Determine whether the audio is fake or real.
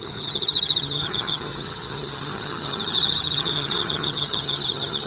fake